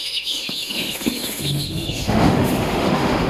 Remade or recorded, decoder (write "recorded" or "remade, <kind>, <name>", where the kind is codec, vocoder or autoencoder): remade, autoencoder, DAC-VAE